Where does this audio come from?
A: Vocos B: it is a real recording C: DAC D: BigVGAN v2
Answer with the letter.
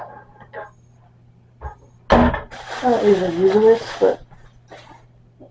B